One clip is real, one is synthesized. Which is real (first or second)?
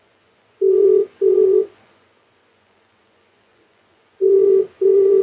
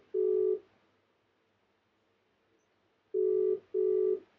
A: second